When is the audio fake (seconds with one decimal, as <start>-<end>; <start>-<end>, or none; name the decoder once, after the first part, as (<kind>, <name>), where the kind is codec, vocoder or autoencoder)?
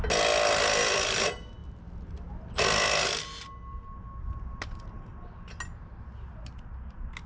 none